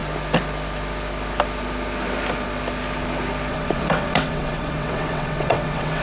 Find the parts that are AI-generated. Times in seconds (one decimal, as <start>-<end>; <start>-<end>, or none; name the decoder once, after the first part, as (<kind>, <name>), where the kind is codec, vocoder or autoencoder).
3.5-6.0 (vocoder, WaveNeXt)